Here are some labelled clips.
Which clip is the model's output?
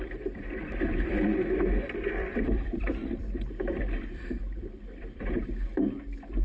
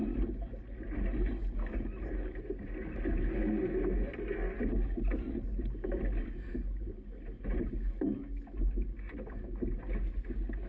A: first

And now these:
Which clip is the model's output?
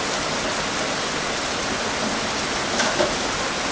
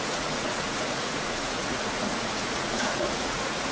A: second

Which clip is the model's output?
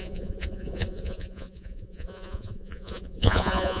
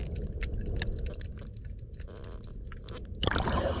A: first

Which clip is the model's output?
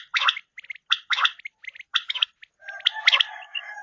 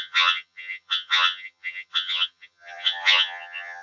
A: second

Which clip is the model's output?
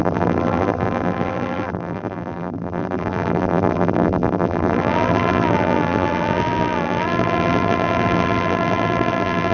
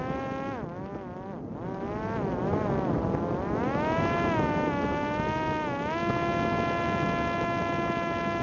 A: first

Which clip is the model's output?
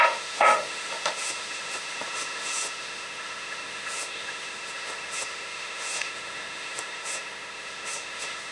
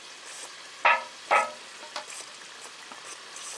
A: first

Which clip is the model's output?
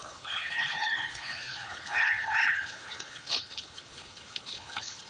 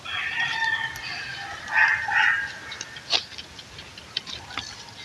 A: first